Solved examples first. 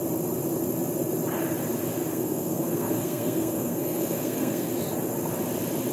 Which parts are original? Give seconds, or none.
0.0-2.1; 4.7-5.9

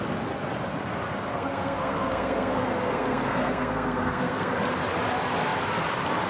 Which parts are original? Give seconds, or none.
0.0-1.3; 4.5-6.3

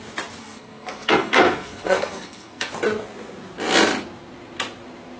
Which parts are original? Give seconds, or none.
0.0-0.4; 2.7-5.2

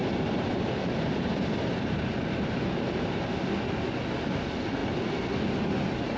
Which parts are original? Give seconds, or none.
3.3-6.2

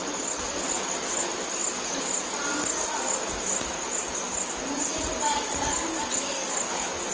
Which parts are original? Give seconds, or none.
0.0-7.1